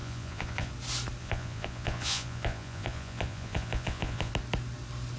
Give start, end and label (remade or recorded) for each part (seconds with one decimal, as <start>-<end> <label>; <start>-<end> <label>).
0.0-0.7 remade; 0.7-1.2 recorded; 1.2-4.3 remade; 4.3-5.2 recorded